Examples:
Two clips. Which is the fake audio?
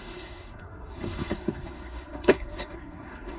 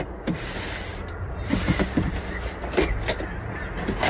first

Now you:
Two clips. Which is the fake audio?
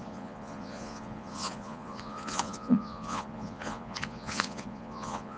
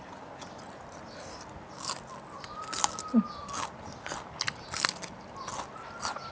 first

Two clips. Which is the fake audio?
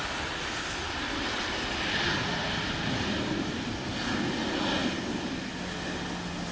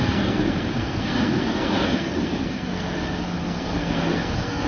second